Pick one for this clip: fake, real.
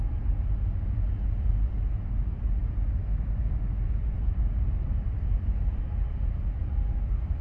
real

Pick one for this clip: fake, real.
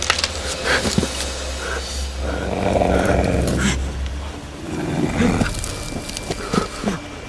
real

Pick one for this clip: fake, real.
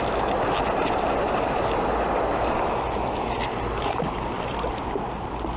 real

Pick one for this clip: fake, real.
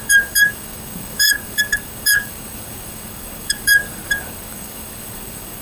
fake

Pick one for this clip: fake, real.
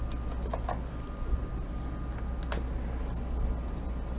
real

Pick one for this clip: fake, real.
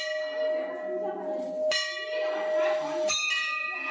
real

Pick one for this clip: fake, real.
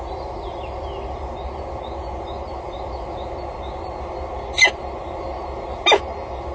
real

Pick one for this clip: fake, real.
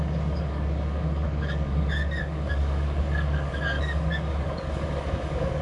fake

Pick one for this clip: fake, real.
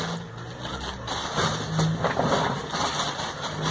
real